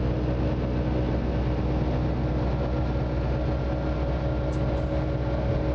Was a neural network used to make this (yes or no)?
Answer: no